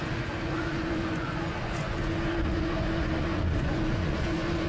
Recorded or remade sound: remade